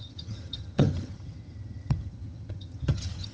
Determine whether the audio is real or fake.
fake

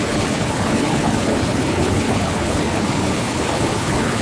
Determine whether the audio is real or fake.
fake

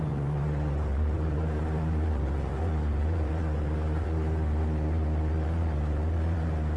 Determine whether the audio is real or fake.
fake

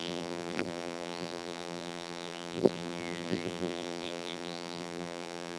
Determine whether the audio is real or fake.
fake